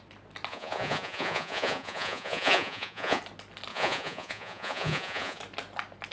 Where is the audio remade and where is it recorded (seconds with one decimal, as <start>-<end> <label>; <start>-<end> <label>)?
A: 0.0-0.5 recorded; 0.5-3.2 remade; 3.2-3.7 recorded; 3.7-5.4 remade; 5.4-6.1 recorded